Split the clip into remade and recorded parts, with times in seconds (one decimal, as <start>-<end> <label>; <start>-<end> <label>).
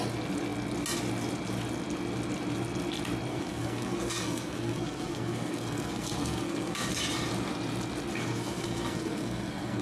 0.0-3.3 recorded; 3.3-6.9 remade; 6.9-8.1 recorded; 8.1-9.8 remade